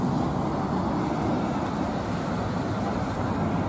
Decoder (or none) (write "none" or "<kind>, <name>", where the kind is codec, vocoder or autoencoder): none